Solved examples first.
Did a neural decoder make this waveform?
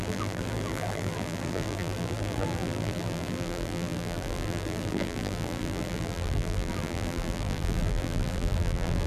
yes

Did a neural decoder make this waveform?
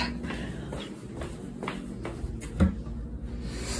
no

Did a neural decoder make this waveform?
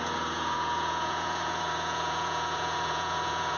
yes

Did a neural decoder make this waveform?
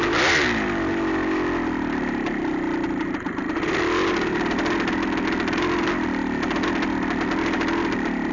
no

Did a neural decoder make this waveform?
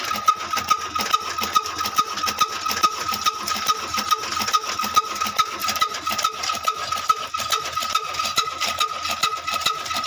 no